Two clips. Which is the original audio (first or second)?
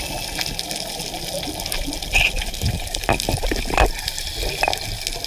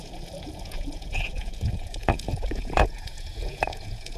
first